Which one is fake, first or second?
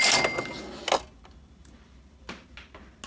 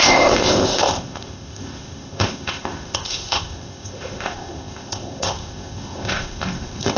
second